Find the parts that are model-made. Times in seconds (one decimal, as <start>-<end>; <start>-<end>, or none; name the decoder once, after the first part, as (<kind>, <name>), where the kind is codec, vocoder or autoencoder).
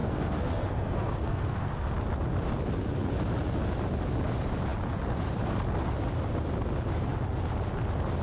0.0-1.7 (codec, SNAC)